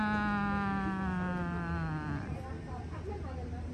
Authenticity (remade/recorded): recorded